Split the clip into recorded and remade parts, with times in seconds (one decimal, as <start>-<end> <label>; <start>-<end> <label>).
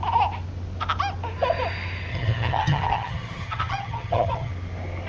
0.0-2.1 recorded; 2.1-4.5 remade; 4.5-5.1 recorded